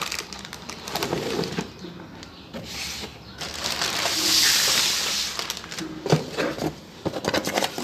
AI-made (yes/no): no